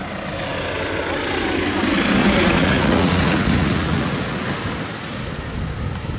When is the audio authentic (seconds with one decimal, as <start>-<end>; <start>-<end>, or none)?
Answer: 0.0-2.2; 4.4-6.2

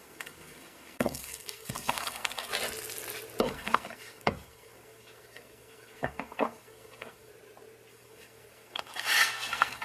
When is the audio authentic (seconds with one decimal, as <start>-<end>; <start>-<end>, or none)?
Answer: 2.5-3.4; 7.3-7.9

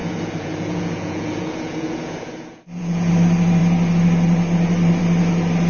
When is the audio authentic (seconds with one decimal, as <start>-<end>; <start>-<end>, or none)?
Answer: 3.1-5.7

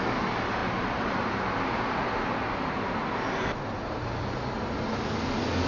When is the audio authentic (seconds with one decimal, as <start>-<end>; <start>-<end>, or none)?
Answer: 0.0-5.7

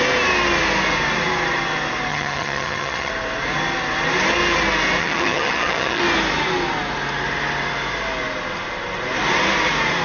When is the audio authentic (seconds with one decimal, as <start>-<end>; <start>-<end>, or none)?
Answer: 0.0-2.1; 3.1-5.0; 6.0-10.0

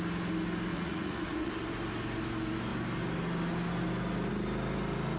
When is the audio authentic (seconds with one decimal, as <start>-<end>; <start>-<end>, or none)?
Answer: 0.0-0.7; 1.5-5.2